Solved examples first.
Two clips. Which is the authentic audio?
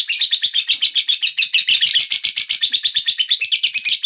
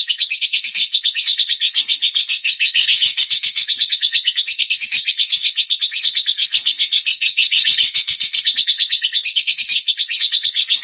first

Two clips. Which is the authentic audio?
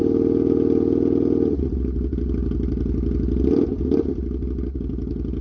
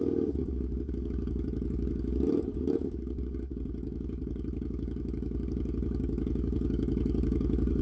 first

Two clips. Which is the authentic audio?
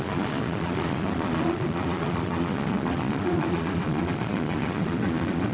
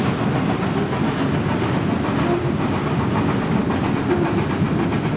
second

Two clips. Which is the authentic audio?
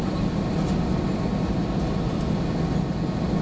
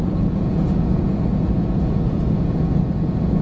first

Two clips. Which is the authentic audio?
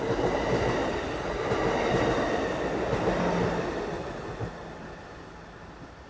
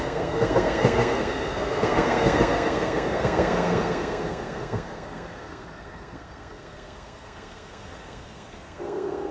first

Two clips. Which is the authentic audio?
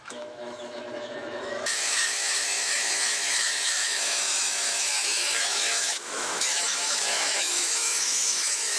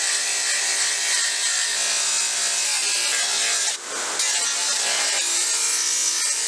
second